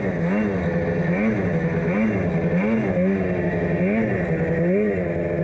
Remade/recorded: recorded